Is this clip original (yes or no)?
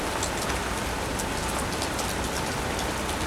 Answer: yes